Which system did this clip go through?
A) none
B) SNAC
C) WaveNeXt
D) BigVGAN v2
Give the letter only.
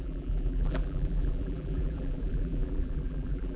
D